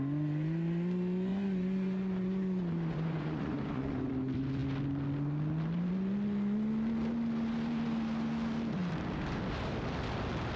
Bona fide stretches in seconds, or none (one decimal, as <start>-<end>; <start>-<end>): 0.0-1.3; 4.1-10.6